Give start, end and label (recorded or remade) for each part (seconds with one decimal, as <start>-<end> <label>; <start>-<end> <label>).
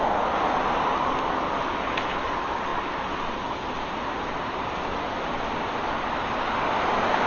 0.0-7.3 recorded